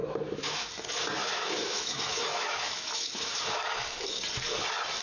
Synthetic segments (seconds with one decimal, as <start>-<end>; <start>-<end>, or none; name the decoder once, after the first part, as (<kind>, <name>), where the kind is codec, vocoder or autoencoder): 0.0-0.7 (autoencoder, DAC-VAE); 1.2-4.2